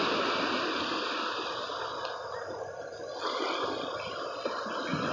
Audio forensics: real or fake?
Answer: real